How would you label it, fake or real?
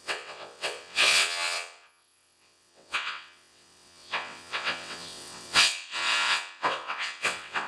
fake